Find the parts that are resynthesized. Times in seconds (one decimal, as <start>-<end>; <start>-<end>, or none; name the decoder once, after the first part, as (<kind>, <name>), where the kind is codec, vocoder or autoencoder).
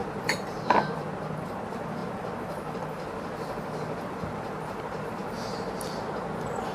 0.0-1.1 (vocoder, BigVGAN v2)